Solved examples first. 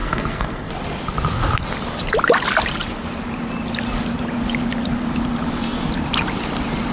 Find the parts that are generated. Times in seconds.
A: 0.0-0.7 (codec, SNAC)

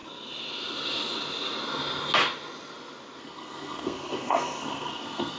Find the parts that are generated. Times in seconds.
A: 3.2-5.4 (codec, SNAC)